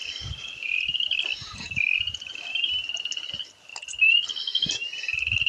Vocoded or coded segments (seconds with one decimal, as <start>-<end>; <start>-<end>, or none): none